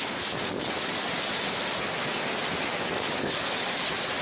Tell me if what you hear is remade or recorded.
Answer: recorded